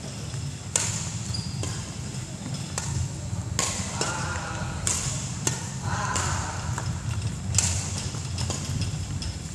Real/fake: real